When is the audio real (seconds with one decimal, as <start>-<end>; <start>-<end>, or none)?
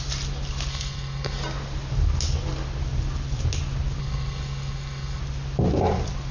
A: 0.0-0.7; 1.4-4.0; 5.2-6.3